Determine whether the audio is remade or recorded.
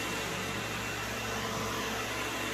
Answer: recorded